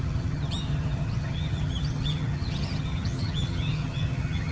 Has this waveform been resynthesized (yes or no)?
yes